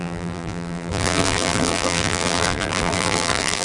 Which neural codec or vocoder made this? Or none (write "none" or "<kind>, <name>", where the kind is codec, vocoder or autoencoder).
vocoder, BigVGAN v2